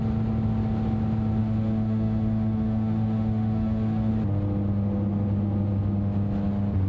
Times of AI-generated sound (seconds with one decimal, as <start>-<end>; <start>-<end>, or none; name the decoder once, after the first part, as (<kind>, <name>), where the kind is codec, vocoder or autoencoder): 1.4-4.1 (autoencoder, DAC-VAE)